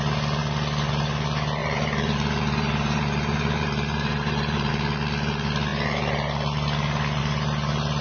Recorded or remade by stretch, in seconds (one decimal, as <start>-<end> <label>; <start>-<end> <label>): 0.0-1.6 recorded; 1.6-4.7 remade; 4.7-8.0 recorded